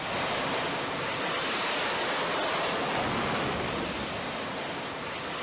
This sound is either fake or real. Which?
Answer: real